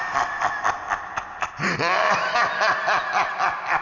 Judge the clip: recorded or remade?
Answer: recorded